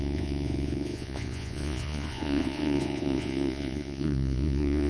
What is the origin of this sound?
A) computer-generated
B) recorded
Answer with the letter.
A